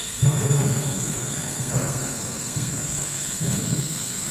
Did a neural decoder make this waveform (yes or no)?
yes